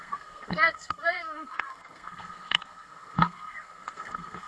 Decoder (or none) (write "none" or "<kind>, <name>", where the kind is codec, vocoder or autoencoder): codec, SNAC